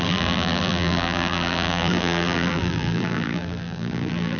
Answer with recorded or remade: remade